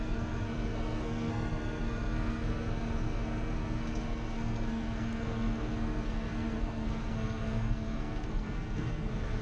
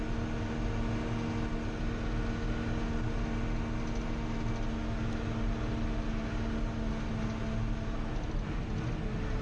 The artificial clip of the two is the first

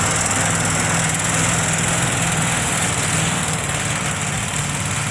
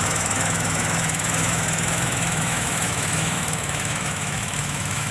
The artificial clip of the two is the second